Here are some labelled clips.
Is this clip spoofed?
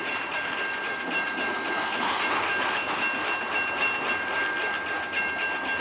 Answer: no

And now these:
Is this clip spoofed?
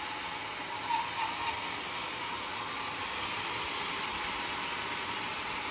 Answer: no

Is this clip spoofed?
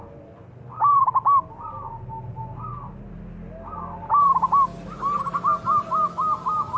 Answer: no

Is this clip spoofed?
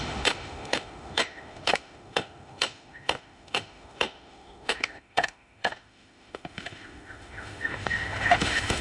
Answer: yes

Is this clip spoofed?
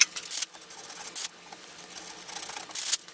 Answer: no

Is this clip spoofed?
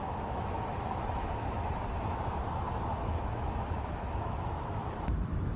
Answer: yes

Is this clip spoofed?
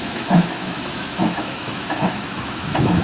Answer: yes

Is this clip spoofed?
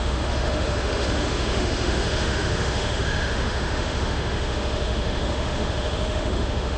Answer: yes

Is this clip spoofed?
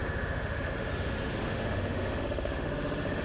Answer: yes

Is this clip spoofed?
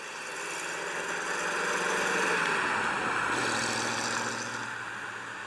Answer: no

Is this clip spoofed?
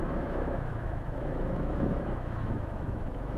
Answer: yes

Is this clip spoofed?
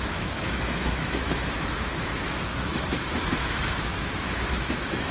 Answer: yes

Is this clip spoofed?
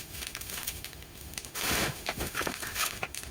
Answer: yes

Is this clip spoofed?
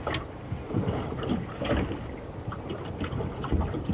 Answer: no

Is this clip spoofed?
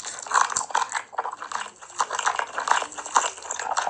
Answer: no